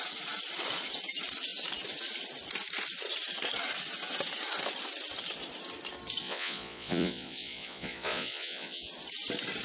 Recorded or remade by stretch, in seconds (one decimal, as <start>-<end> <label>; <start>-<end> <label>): 0.0-6.2 recorded; 6.2-8.9 remade; 8.9-9.6 recorded